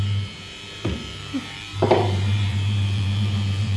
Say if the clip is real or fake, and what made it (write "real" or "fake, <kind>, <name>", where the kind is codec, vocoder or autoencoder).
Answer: fake, vocoder, BigVGAN v2